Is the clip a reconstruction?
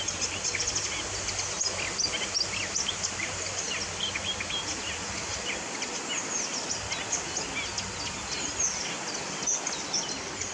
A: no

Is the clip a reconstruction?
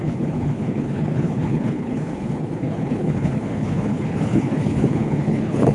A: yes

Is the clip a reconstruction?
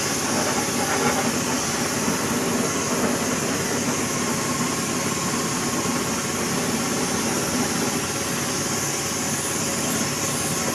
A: no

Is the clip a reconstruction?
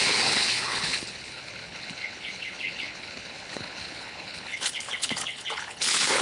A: yes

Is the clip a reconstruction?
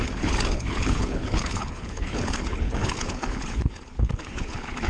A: yes